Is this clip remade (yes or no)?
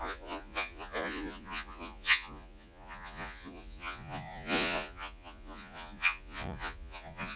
yes